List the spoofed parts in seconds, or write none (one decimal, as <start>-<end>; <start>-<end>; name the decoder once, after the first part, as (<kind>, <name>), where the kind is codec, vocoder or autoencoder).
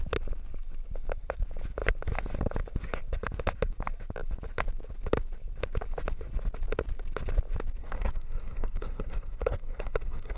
7.8-10.4 (codec, SNAC)